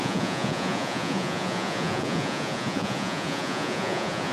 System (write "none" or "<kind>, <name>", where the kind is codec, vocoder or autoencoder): vocoder, Vocos